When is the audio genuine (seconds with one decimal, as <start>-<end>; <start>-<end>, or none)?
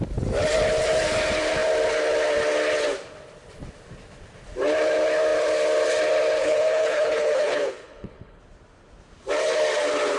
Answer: 0.0-6.4; 8.4-10.2